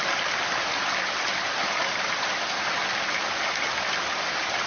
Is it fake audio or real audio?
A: real